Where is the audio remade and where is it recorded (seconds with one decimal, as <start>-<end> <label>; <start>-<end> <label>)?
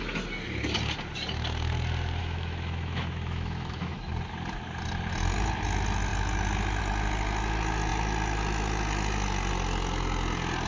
0.0-2.2 recorded; 2.2-4.1 remade; 4.1-10.7 recorded